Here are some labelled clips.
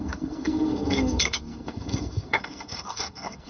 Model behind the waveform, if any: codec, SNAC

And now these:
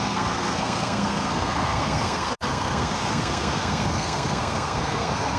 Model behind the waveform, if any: codec, SNAC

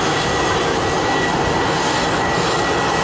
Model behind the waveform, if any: none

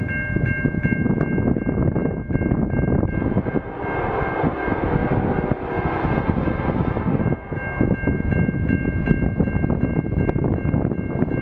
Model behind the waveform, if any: none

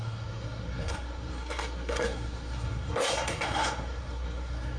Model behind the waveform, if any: codec, SNAC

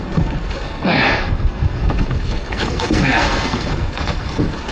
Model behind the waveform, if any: codec, SNAC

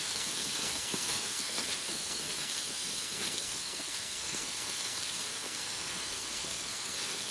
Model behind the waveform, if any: codec, SNAC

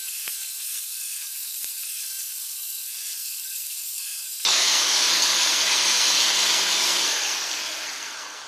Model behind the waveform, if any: codec, SNAC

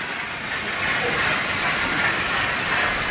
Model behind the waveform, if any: none